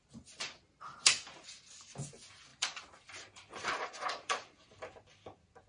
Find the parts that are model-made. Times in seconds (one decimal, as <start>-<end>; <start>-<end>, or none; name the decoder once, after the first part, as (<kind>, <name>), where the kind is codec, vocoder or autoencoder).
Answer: 2.5-4.9 (vocoder, BigVGAN v2)